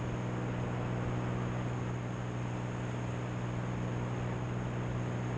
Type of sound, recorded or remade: recorded